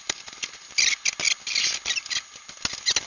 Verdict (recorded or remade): recorded